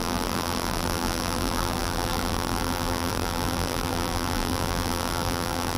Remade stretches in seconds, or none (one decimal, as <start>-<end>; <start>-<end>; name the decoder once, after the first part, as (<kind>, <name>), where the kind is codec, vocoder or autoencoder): 0.0-5.8 (vocoder, BigVGAN v2)